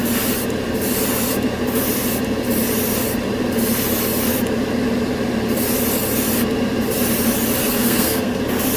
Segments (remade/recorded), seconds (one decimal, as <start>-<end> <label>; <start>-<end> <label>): 0.0-7.6 recorded; 7.6-8.4 remade; 8.4-8.8 recorded